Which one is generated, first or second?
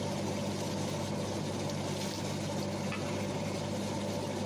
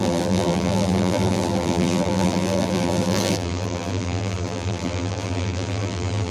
second